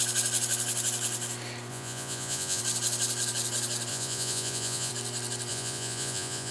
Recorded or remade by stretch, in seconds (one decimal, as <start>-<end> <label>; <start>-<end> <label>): 0.0-1.7 recorded; 1.7-2.6 remade; 2.6-3.9 recorded; 3.9-4.9 remade; 4.9-5.5 recorded; 5.5-6.5 remade